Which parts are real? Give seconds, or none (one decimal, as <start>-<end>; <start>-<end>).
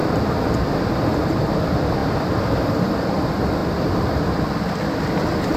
0.5-1.1; 1.6-2.0; 2.8-5.6